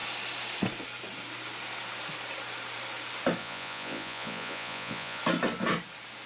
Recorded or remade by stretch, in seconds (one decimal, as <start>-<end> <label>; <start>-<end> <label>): 0.0-3.4 recorded; 3.4-5.2 remade; 5.2-6.3 recorded